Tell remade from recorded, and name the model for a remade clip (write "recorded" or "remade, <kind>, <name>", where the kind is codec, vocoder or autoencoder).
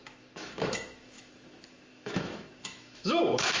remade, autoencoder, DAC-VAE